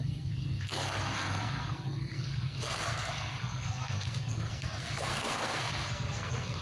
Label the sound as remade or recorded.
remade